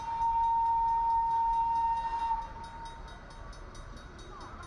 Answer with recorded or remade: recorded